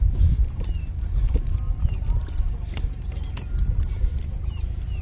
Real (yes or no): yes